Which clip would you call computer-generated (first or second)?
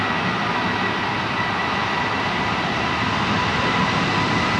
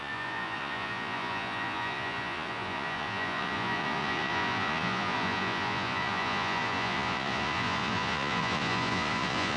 second